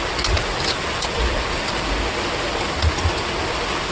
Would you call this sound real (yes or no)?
yes